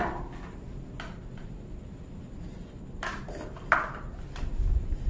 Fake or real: real